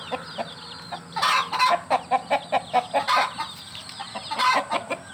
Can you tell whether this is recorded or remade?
recorded